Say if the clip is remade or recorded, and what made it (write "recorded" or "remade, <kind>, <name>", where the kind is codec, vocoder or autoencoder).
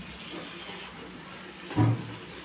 recorded